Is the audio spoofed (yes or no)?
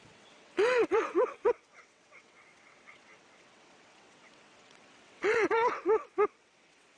yes